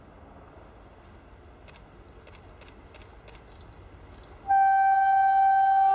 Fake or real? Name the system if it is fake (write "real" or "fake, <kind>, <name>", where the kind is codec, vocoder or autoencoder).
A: real